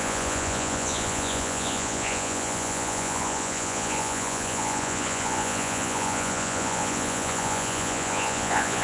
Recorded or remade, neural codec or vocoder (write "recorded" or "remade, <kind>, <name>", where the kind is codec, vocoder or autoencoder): remade, vocoder, Vocos